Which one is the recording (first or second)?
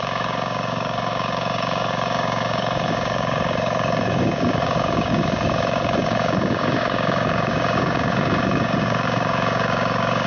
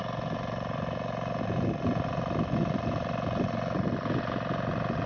second